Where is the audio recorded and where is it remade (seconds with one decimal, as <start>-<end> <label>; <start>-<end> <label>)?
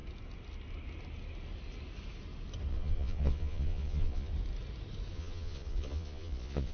0.0-2.7 recorded; 2.7-4.3 remade; 4.3-5.1 recorded; 5.1-6.7 remade